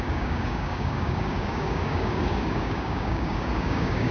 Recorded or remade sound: remade